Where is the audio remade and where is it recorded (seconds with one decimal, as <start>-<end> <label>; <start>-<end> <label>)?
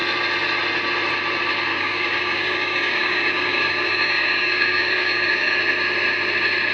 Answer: 0.0-1.7 recorded; 1.7-5.6 remade; 5.6-6.7 recorded